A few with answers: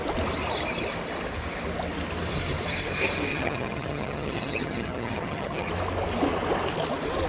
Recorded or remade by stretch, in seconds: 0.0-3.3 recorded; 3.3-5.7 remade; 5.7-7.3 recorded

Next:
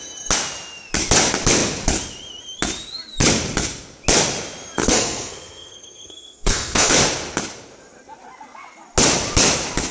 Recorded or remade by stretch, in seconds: 0.0-4.8 recorded; 4.8-6.9 remade; 6.9-9.9 recorded

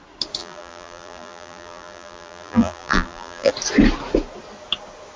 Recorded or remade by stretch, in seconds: 0.0-0.4 recorded; 0.4-3.5 remade; 3.5-5.2 recorded

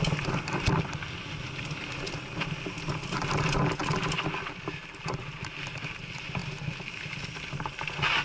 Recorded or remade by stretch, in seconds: 0.0-8.2 recorded

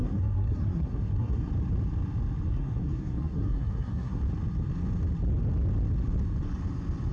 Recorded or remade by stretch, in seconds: 0.0-1.5 remade; 1.5-2.5 recorded; 2.5-4.2 remade; 4.2-7.1 recorded

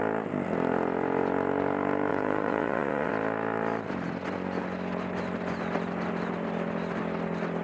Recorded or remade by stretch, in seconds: 0.0-2.1 recorded; 2.1-3.1 remade; 3.1-7.6 recorded

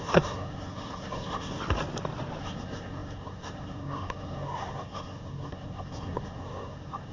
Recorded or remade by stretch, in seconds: 0.0-1.6 remade; 1.6-2.4 recorded; 2.4-7.1 remade